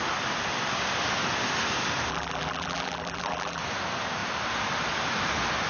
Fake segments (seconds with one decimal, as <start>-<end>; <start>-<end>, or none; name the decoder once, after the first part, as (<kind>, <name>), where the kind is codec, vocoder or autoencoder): 2.1-3.6 (vocoder, BigVGAN v2)